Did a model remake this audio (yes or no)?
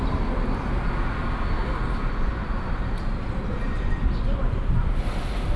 no